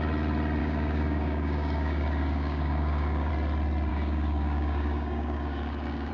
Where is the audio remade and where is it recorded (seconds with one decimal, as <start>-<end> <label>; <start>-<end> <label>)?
0.0-0.6 recorded; 0.6-3.3 remade; 3.3-3.9 recorded; 3.9-6.1 remade